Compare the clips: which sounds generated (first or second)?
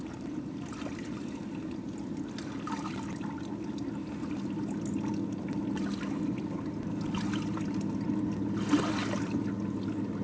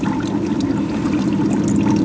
second